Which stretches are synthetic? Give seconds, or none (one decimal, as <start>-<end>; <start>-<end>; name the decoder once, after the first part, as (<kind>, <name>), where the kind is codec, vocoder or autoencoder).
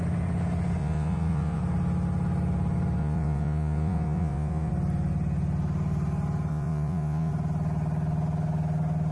0.8-1.6 (vocoder, Vocos); 3.0-4.7; 6.5-7.3